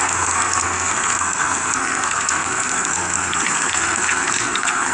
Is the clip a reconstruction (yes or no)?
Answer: yes